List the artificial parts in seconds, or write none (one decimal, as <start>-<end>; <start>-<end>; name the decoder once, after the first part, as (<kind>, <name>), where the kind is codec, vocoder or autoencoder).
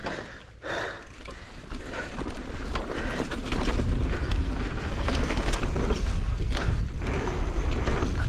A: 4.2-5.6 (codec, SNAC); 6.0-6.8